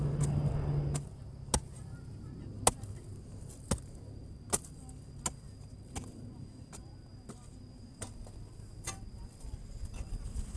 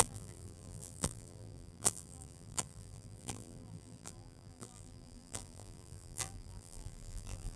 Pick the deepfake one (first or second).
second